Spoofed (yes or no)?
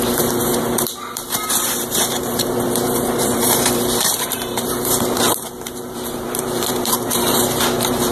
yes